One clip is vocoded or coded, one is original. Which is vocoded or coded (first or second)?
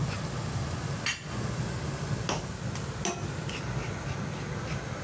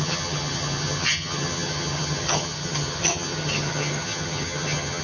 second